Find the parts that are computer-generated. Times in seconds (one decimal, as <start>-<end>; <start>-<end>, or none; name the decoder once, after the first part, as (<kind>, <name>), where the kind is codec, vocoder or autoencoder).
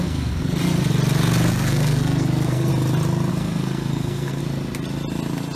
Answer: 0.0-0.6 (codec, SNAC); 1.5-2.7; 3.3-4.4